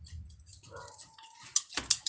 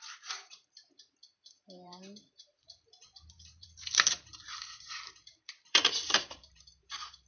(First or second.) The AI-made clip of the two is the second